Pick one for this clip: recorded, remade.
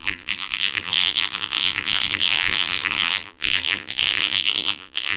remade